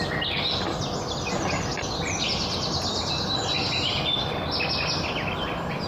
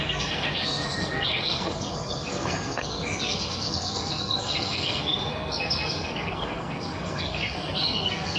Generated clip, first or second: second